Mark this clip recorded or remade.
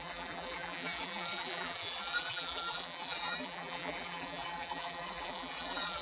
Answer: remade